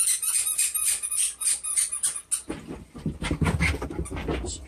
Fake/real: real